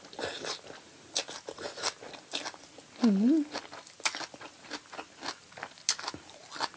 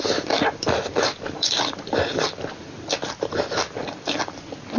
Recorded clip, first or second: first